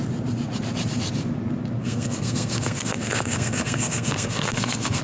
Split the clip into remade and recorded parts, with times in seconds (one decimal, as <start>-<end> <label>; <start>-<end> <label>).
0.0-1.8 recorded; 1.8-5.0 remade